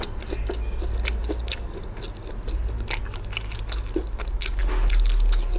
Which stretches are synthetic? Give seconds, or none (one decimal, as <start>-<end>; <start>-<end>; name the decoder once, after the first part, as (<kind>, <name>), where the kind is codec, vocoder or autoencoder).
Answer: none